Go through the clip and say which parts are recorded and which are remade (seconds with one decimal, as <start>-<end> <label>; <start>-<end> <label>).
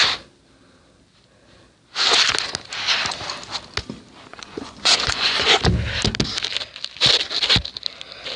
0.0-4.3 recorded; 4.3-5.6 remade; 5.6-8.4 recorded